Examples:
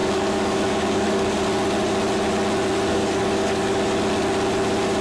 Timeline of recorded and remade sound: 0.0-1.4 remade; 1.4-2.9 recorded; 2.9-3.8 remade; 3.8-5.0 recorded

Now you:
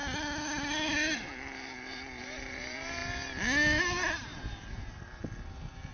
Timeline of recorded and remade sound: 0.0-5.9 recorded

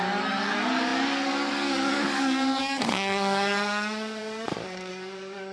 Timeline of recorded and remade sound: 0.0-5.5 remade

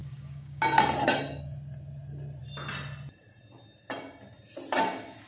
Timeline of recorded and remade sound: 0.0-0.6 remade; 0.6-5.3 recorded

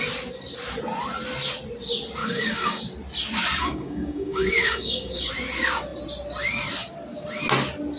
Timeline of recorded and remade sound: 0.0-2.2 recorded; 2.2-2.8 remade; 2.8-3.6 recorded; 3.6-5.3 remade; 5.3-8.0 recorded

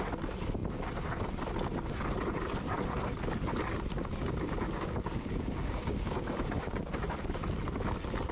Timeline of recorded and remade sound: 0.0-4.2 recorded; 4.2-6.9 remade; 6.9-8.3 recorded

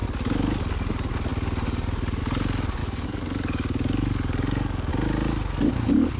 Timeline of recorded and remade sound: 0.0-2.8 recorded; 2.8-4.9 remade; 4.9-6.2 recorded